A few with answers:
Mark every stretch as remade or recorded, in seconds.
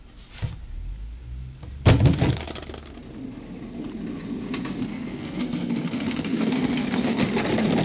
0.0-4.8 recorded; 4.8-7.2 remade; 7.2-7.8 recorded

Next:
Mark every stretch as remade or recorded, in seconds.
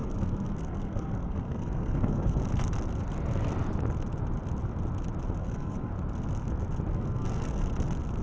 0.0-2.4 remade; 2.4-5.4 recorded; 5.4-5.9 remade; 5.9-6.9 recorded; 6.9-7.6 remade; 7.6-8.2 recorded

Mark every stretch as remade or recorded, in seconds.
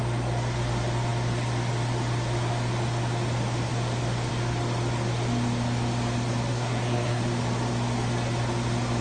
0.0-6.5 recorded; 6.5-7.2 remade; 7.2-9.0 recorded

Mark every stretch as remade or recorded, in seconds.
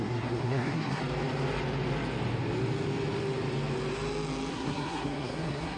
0.0-1.0 remade; 1.0-4.5 recorded; 4.5-5.8 remade